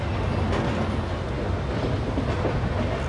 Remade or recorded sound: recorded